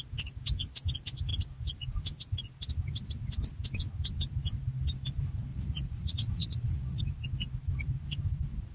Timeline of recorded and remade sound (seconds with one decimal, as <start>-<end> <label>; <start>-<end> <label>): 0.0-5.5 recorded; 5.5-7.0 remade; 7.0-8.7 recorded